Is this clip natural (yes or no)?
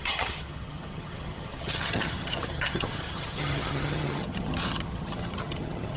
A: no